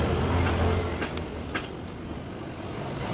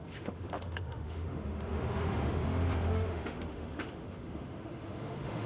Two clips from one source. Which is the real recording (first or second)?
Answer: first